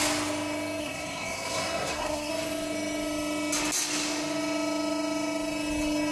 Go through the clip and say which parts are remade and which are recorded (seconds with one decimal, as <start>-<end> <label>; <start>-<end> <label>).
0.0-0.8 recorded; 0.8-2.3 remade; 2.3-6.1 recorded